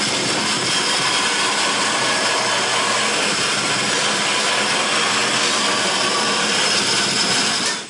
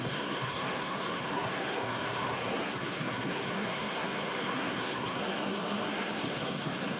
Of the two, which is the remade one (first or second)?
second